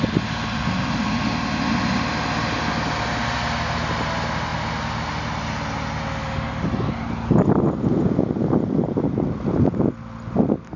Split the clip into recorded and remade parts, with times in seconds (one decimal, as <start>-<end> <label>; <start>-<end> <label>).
0.0-10.8 recorded